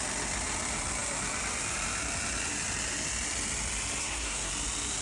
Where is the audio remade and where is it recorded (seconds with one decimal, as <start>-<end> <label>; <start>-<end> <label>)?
0.0-4.0 recorded; 4.0-4.5 remade; 4.5-5.0 recorded